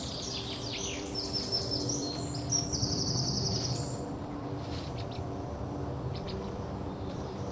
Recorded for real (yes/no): no